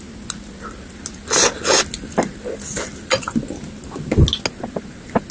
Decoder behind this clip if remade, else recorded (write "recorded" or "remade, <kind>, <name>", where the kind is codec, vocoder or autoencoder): recorded